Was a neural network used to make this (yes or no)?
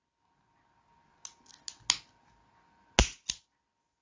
no